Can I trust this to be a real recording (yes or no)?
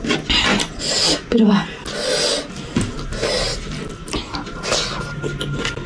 yes